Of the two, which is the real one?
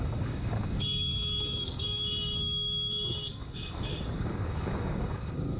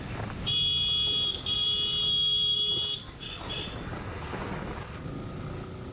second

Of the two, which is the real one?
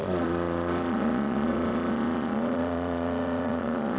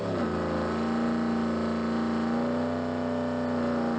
second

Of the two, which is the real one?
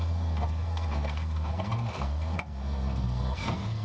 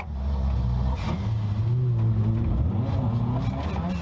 second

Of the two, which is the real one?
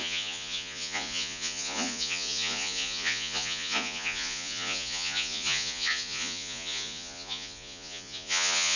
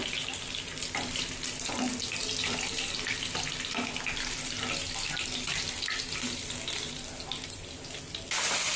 second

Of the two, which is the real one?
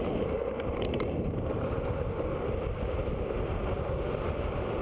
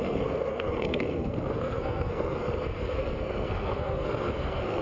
first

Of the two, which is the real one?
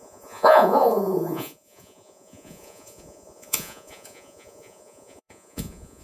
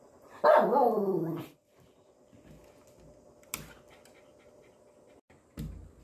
second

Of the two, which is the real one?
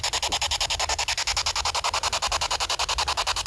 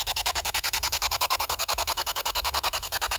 first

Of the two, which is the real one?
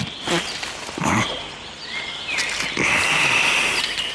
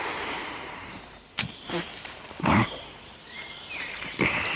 first